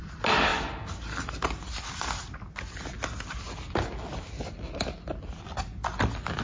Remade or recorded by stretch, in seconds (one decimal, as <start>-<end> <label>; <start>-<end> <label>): 0.0-6.4 recorded